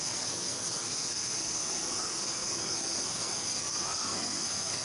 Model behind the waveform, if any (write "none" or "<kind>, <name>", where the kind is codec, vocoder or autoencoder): codec, SNAC